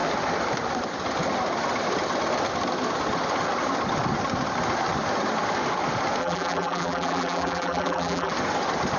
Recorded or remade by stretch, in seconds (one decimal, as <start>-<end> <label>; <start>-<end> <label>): 0.0-6.2 recorded; 6.2-8.3 remade; 8.3-9.0 recorded